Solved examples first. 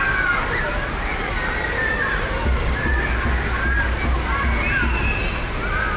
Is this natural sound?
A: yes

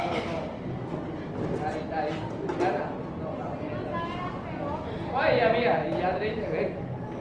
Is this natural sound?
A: yes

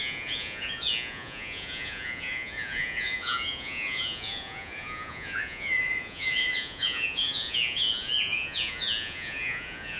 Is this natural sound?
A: no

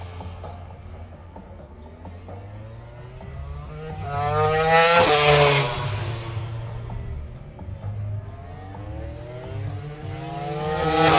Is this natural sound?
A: yes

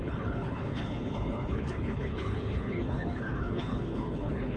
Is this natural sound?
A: no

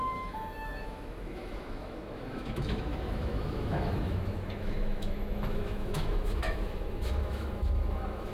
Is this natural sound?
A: no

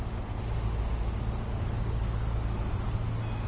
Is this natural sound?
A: yes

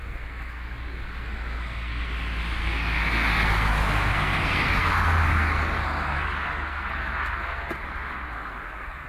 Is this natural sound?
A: no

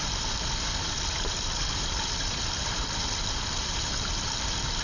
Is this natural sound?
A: no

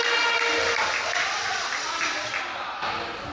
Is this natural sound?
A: yes